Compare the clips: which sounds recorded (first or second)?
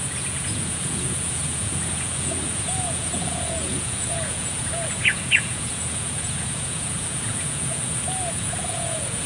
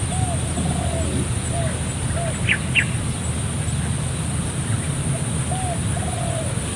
second